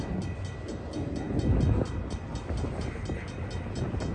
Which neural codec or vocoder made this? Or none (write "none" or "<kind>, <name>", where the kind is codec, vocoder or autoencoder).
none